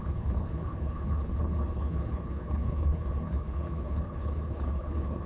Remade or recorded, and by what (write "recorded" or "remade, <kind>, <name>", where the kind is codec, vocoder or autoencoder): remade, codec, HILCodec